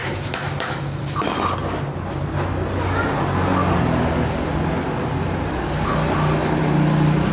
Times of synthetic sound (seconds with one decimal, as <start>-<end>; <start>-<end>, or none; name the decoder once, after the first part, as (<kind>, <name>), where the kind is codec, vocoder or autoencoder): 0.0-1.4 (autoencoder, DAC-VAE)